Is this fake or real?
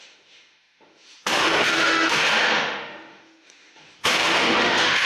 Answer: fake